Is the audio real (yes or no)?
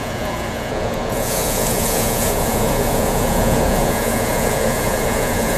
no